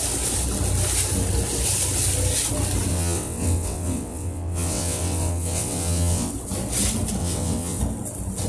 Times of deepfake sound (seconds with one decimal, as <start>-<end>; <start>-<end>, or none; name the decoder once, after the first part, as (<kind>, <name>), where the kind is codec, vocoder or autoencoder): 2.9-6.3 (vocoder, WaveNeXt); 7.2-7.8